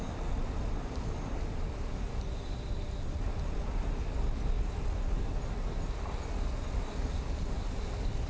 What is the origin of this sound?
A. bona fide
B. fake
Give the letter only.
A